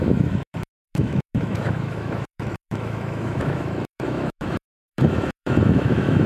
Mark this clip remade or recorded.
remade